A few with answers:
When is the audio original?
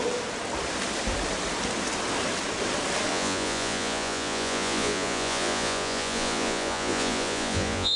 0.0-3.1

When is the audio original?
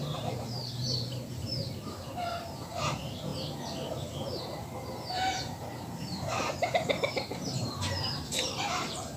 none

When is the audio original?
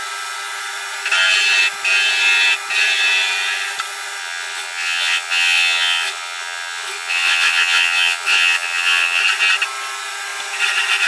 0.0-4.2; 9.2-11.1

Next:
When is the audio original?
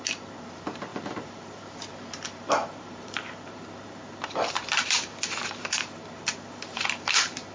none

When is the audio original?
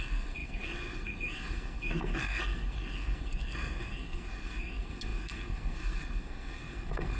none